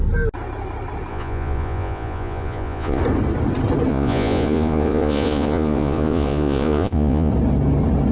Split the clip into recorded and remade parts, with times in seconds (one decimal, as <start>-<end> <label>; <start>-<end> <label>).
0.0-1.1 recorded; 1.1-3.0 remade; 3.0-3.9 recorded; 3.9-7.3 remade; 7.3-8.1 recorded